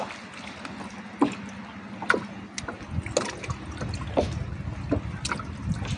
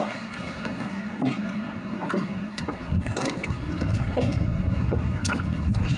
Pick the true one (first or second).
first